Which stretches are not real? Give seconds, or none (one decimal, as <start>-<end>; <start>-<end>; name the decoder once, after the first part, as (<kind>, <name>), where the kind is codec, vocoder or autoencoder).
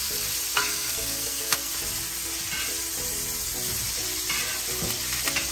0.5-1.7 (codec, SNAC)